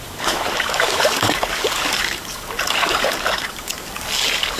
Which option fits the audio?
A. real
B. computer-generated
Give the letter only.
B